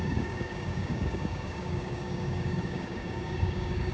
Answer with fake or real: fake